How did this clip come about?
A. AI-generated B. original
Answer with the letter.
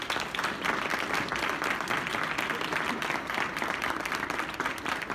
A